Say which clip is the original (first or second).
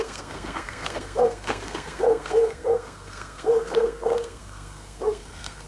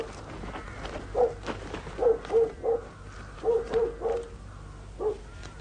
second